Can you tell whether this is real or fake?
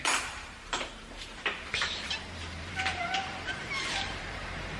fake